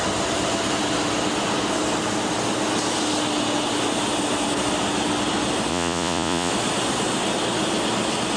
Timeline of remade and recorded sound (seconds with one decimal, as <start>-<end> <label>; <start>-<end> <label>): 0.0-5.7 recorded; 5.7-6.5 remade; 6.5-8.4 recorded